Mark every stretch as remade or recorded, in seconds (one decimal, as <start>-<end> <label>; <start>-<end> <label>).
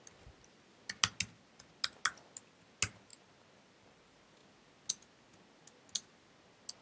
0.0-6.8 recorded